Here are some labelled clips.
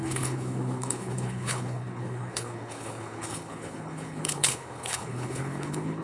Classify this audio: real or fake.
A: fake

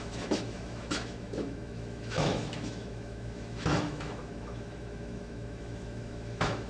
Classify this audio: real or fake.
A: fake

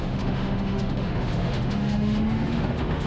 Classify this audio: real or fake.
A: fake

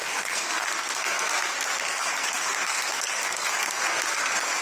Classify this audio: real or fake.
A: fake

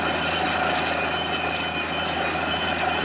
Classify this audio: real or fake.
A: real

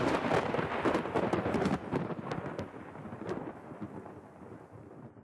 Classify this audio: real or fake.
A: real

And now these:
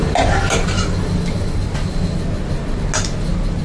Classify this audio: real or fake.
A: real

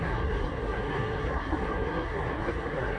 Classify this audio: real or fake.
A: fake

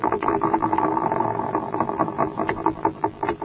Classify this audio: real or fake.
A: fake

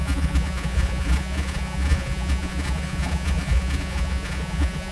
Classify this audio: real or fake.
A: fake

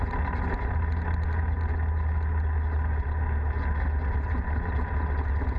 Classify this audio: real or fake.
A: real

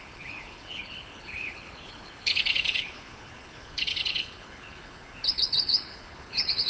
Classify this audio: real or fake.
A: fake